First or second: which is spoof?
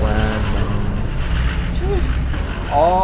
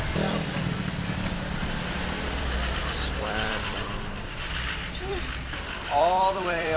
second